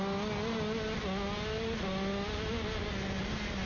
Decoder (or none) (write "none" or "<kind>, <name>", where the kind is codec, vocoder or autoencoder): none